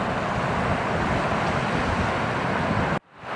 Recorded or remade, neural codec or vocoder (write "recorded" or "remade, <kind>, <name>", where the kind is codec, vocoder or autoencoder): recorded